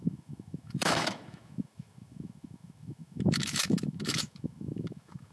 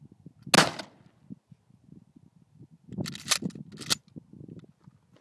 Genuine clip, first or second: second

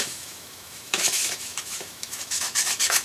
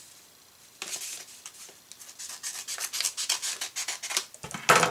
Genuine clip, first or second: second